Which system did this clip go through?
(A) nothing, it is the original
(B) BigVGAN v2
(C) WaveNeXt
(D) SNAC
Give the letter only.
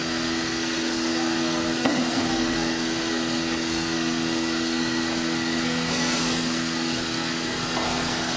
D